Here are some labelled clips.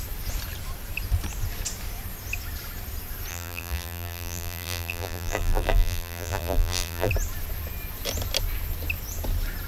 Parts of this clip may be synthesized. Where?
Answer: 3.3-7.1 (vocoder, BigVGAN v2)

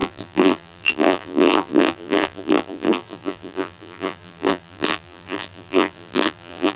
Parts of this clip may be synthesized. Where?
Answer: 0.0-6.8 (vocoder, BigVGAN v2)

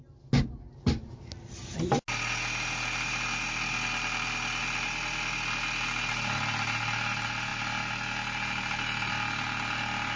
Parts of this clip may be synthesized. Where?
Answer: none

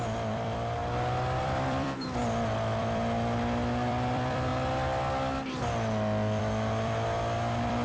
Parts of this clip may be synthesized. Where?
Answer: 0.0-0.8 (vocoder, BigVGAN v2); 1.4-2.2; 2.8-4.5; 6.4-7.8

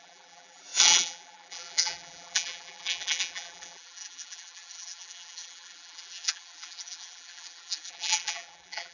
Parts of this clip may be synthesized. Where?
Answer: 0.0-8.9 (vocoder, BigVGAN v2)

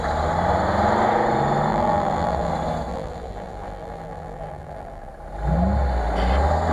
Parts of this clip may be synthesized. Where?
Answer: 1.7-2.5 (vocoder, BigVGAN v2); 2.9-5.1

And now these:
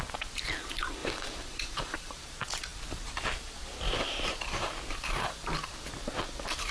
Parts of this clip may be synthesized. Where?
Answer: 1.0-2.3 (vocoder, BigVGAN v2)